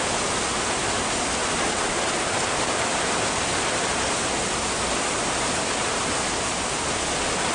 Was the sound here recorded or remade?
recorded